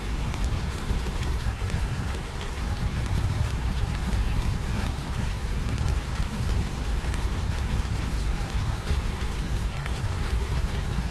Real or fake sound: fake